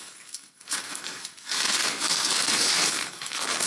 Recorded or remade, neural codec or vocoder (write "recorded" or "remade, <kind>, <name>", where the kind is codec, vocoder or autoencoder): remade, codec, SNAC